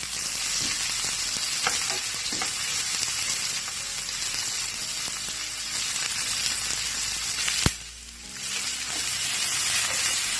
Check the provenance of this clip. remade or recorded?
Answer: recorded